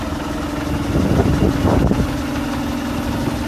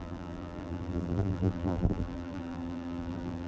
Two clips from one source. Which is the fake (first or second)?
second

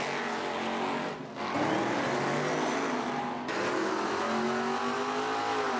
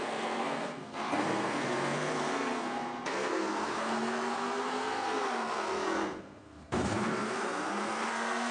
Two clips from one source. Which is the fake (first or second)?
second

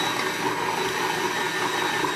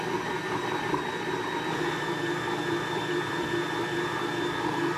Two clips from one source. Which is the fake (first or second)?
second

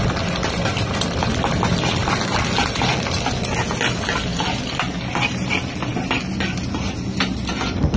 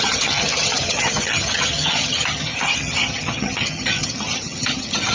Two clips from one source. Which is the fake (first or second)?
second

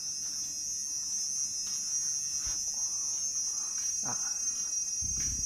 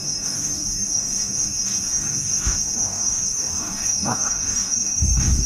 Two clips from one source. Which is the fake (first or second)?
second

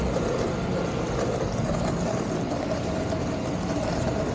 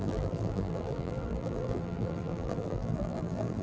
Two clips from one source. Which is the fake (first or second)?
second